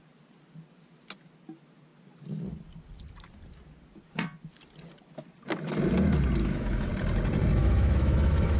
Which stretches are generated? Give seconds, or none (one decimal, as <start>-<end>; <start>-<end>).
6.4-6.9; 7.6-8.6